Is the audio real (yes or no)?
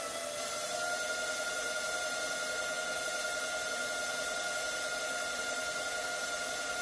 no